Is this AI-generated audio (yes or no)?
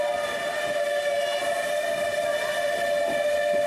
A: no